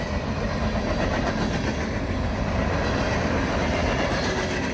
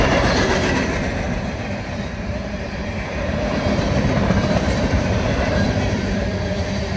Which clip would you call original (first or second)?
first